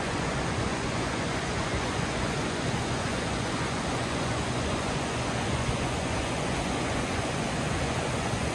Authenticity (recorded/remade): remade